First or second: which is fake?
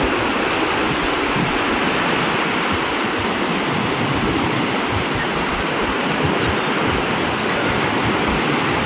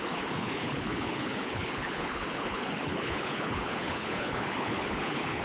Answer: second